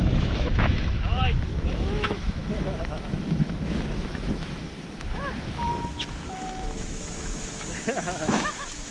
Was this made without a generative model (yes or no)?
no